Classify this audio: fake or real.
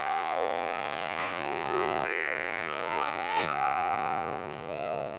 fake